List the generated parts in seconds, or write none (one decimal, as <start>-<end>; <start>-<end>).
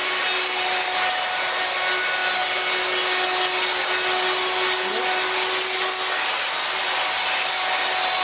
none